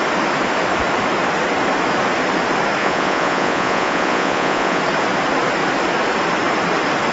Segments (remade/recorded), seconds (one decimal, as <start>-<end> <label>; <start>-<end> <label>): 0.0-2.8 recorded; 2.8-4.8 remade; 4.8-7.1 recorded

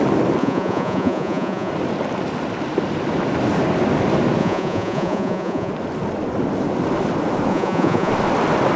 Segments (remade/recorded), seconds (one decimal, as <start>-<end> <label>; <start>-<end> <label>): 0.0-0.4 recorded; 0.4-1.7 remade; 1.7-4.4 recorded; 4.4-5.7 remade; 5.7-7.5 recorded; 7.5-8.1 remade; 8.1-8.8 recorded

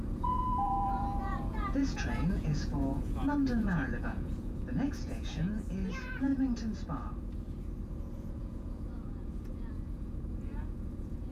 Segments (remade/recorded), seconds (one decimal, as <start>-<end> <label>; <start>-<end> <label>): 0.0-6.3 remade; 6.3-8.0 recorded; 8.0-11.3 remade